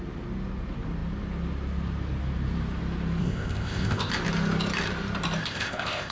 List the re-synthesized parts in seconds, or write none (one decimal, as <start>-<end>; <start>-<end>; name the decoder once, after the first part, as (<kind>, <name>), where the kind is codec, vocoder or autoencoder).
3.2-4.1 (codec, ZipCodec); 5.4-6.1